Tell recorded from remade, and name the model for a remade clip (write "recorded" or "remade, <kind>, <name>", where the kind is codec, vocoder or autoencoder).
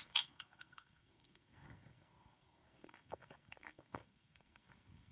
remade, codec, SNAC